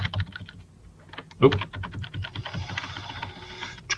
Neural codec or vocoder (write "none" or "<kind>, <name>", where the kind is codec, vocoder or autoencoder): none